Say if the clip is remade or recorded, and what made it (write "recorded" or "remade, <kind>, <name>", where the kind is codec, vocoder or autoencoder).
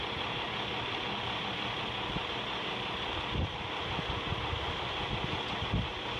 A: recorded